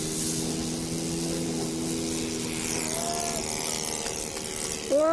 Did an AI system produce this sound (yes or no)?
no